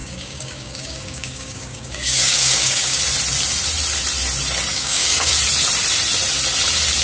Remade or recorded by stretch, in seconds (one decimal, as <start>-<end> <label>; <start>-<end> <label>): 0.0-3.0 remade; 3.0-4.7 recorded; 4.7-5.3 remade; 5.3-7.0 recorded